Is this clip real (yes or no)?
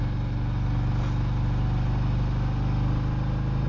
yes